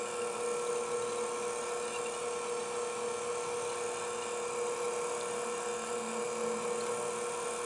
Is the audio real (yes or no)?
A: yes